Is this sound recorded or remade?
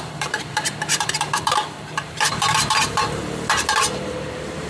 remade